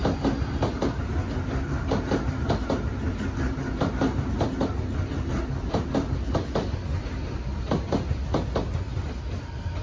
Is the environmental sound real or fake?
real